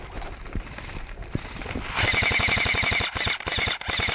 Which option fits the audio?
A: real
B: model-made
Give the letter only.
A